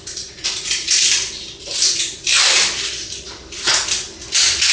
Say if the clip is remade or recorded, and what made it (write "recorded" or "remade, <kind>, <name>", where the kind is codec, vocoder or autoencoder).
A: remade, vocoder, BigVGAN v2